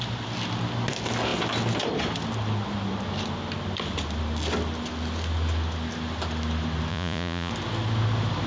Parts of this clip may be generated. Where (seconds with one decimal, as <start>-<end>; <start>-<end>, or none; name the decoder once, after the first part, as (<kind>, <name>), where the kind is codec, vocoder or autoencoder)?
6.9-7.5 (vocoder, Vocos)